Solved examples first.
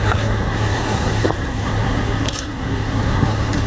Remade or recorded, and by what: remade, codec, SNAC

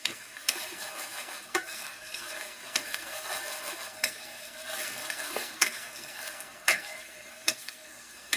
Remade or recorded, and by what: remade, codec, SNAC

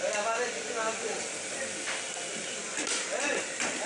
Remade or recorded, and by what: recorded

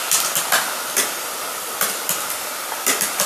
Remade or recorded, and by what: recorded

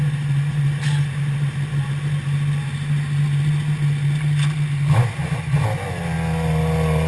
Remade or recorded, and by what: recorded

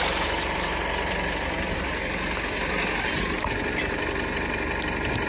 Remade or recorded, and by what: remade, vocoder, BigVGAN v2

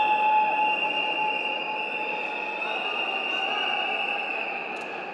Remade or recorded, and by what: recorded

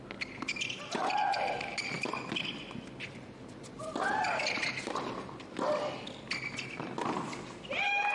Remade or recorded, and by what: recorded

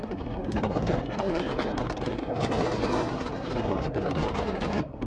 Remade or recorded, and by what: remade, codec, SNAC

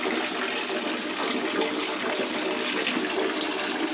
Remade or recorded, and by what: recorded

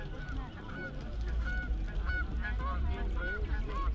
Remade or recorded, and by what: recorded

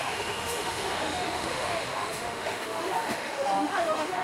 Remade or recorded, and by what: remade, autoencoder, DAC-VAE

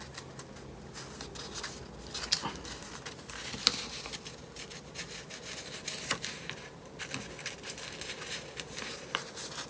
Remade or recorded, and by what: recorded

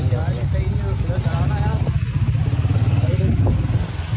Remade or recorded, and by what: recorded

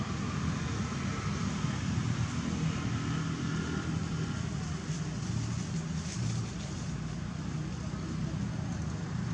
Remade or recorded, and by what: recorded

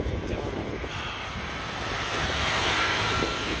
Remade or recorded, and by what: recorded